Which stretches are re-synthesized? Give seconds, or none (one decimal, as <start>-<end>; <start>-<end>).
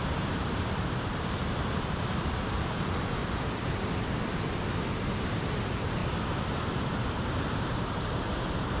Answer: 0.0-3.2; 5.2-6.0; 7.1-8.8